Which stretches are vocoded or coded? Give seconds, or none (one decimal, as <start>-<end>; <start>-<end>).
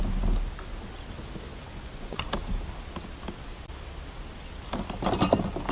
1.5-2.2